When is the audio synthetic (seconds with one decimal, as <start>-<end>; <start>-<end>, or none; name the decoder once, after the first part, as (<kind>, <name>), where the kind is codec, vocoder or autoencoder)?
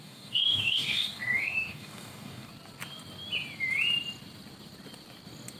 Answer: 0.0-2.5 (codec, DAC)